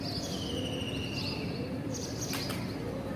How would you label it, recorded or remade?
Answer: recorded